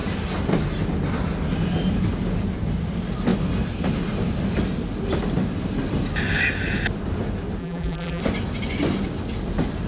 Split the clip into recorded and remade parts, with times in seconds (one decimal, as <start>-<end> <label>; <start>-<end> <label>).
0.0-7.6 recorded; 7.6-8.2 remade; 8.2-9.9 recorded